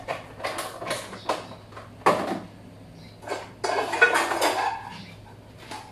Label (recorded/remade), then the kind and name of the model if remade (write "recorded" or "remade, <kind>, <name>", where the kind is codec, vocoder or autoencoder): recorded